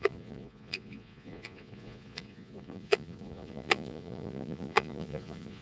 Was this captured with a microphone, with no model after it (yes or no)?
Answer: no